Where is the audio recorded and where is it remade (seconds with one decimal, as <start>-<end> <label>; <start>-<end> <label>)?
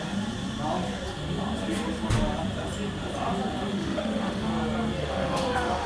0.0-3.7 recorded; 3.7-4.5 remade; 4.5-5.0 recorded; 5.0-5.9 remade